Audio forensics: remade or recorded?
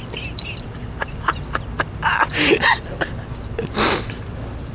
recorded